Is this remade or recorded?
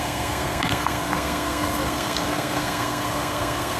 remade